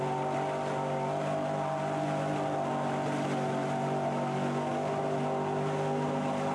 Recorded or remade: recorded